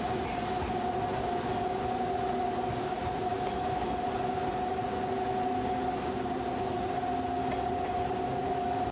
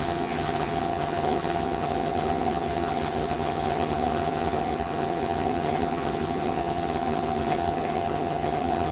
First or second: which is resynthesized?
second